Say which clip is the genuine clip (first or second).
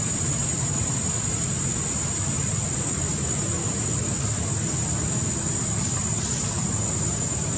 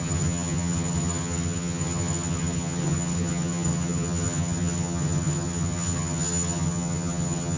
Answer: first